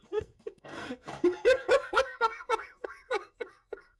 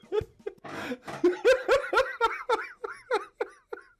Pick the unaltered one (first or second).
second